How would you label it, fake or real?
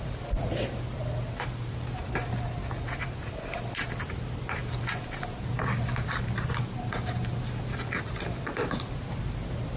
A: real